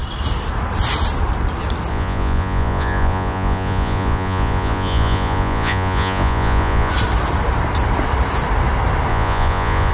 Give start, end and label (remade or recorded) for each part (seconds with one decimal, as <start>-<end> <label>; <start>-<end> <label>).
0.0-1.9 recorded; 1.9-6.9 remade; 6.9-9.1 recorded; 9.1-9.9 remade